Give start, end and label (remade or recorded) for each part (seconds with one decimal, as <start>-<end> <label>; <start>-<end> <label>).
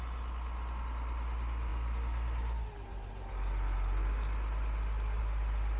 0.0-5.8 recorded